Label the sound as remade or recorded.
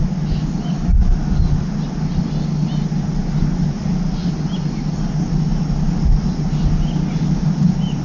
recorded